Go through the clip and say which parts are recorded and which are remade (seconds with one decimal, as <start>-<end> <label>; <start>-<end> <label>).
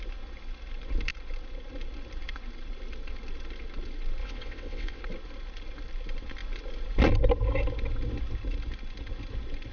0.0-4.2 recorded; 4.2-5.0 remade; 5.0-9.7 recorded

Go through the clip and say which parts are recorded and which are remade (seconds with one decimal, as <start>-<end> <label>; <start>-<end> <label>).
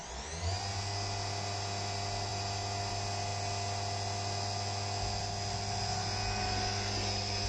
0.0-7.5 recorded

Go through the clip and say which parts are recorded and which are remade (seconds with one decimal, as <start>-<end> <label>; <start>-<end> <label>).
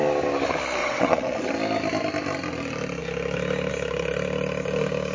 0.0-0.8 recorded; 0.8-1.5 remade; 1.5-5.1 recorded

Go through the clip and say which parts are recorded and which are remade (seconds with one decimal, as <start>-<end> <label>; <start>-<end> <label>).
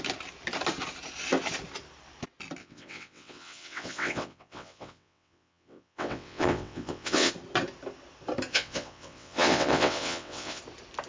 0.0-2.6 recorded; 2.6-7.3 remade; 7.3-8.5 recorded; 8.5-10.6 remade; 10.6-11.1 recorded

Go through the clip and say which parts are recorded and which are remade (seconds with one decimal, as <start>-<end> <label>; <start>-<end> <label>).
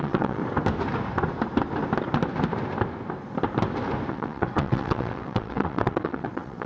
0.0-0.4 remade; 0.4-4.1 recorded; 4.1-6.7 remade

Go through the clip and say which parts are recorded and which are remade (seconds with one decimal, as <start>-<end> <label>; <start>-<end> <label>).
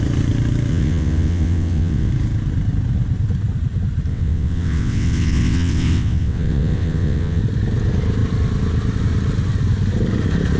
0.0-0.7 recorded; 0.7-2.1 remade; 2.1-4.1 recorded; 4.1-7.4 remade; 7.4-10.6 recorded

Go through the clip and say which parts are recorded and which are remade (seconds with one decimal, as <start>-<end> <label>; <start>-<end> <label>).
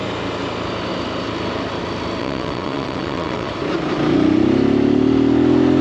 0.0-2.2 recorded; 2.2-3.5 remade; 3.5-5.8 recorded